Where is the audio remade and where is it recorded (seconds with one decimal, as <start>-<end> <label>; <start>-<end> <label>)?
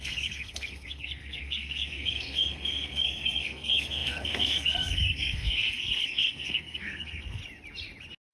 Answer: 0.0-7.4 remade; 7.4-8.3 recorded